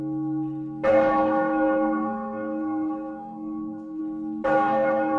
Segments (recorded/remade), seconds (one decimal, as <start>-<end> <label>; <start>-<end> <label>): 0.0-0.9 recorded; 0.9-4.0 remade; 4.0-4.5 recorded; 4.5-5.2 remade